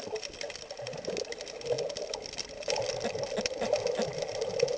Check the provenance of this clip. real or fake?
real